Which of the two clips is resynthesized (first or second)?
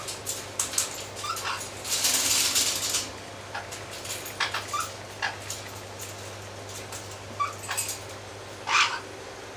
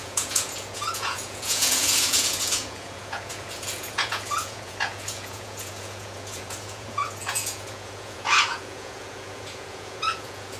second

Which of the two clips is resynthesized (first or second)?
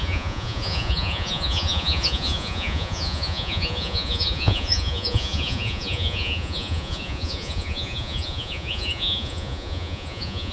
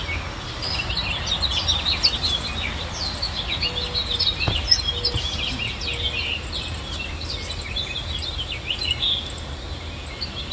first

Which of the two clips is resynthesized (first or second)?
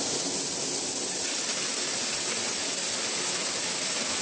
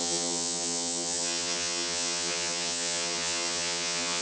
second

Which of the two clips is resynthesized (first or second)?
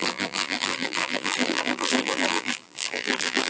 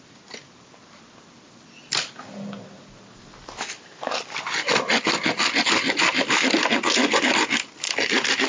first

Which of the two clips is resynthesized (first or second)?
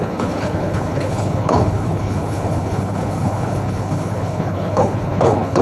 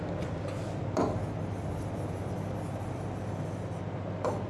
first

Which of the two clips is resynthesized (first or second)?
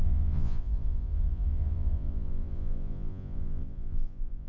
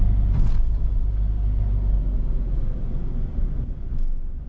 first